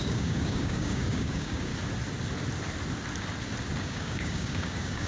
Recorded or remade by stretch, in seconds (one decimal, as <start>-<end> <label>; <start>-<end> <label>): 0.0-1.7 remade; 1.7-3.8 recorded; 3.8-5.1 remade